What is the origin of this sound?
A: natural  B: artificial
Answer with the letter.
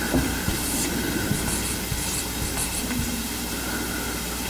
A